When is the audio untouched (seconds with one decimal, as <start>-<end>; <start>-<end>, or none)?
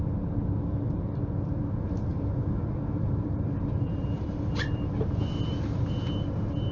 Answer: 0.0-2.1; 6.1-6.7